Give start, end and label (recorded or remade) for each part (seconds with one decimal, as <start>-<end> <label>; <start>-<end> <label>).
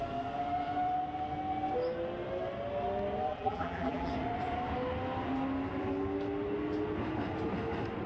0.0-3.3 recorded; 3.3-4.1 remade; 4.1-8.1 recorded